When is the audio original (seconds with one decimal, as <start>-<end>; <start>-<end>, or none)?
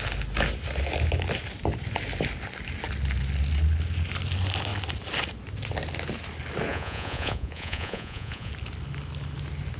0.0-6.7; 8.5-9.8